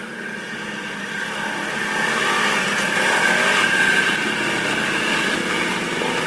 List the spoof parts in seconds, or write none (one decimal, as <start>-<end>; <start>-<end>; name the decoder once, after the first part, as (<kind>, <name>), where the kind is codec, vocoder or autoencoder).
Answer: none